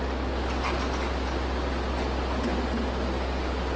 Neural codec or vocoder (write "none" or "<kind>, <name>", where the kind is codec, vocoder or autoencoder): none